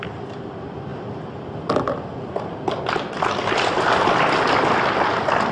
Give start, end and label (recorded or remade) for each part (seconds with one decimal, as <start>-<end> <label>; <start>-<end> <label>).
0.0-5.5 recorded